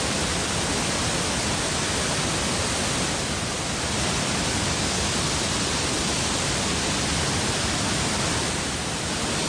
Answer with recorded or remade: recorded